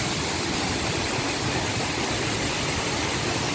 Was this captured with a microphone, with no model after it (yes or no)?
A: yes